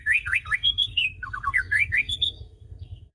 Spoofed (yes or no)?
yes